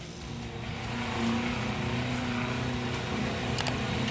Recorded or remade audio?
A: recorded